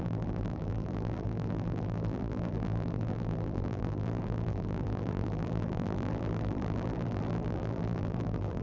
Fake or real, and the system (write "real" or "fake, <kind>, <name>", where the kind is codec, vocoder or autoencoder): fake, vocoder, BigVGAN v2